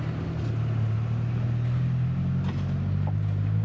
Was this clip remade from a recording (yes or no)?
no